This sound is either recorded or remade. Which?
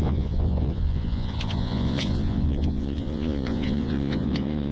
remade